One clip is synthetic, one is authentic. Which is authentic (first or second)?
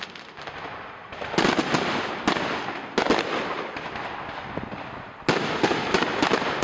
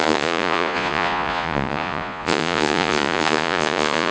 first